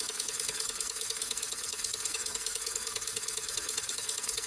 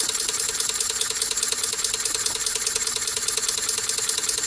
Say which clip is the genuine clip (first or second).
second